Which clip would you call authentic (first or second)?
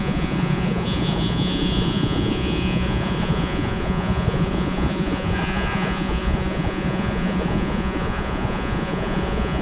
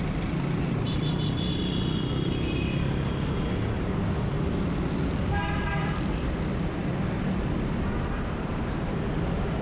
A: second